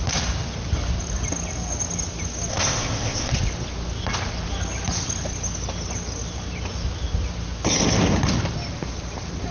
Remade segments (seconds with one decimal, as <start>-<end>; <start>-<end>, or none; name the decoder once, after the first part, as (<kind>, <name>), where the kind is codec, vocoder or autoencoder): 2.5-3.3 (codec, ZipCodec)